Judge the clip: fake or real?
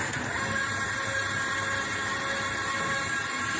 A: real